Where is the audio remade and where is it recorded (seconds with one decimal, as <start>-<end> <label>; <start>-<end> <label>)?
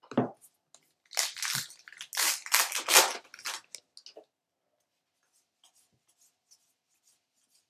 0.0-7.7 recorded